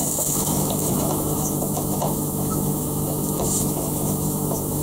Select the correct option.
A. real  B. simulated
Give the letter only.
B